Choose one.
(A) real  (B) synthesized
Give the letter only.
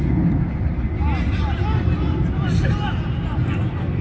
A